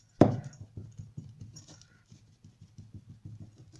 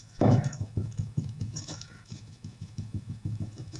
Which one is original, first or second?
first